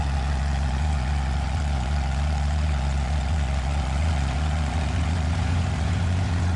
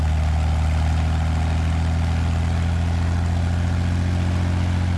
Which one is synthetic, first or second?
first